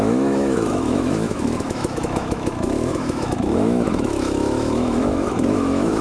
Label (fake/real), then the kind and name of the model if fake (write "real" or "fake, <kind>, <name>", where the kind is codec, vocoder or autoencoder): fake, autoencoder, DAC-VAE